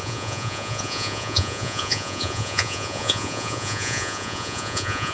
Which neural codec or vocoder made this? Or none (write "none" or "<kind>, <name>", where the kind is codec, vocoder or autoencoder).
vocoder, Vocos